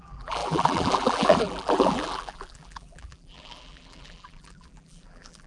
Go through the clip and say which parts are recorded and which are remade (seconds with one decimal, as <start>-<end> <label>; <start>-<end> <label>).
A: 0.0-5.5 remade